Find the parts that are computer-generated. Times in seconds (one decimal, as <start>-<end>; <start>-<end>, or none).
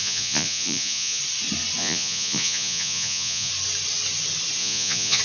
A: 0.0-1.2; 1.8-3.5; 4.6-5.2